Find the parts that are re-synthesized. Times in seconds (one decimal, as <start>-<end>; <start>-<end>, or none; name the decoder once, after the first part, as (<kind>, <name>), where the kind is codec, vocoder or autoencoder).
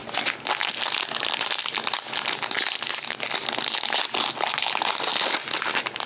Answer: none